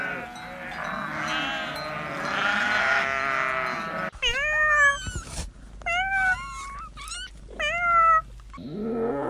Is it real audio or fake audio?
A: real